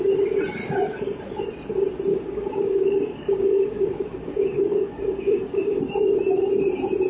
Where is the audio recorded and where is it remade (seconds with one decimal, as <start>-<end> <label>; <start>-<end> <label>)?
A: 0.0-0.6 recorded; 0.6-1.2 remade; 1.2-2.1 recorded; 2.1-5.8 remade; 5.8-7.1 recorded